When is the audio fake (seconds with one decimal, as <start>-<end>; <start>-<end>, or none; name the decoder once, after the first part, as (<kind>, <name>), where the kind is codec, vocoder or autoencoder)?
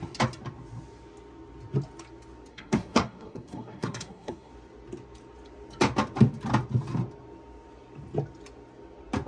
2.5-4.5 (codec, SNAC)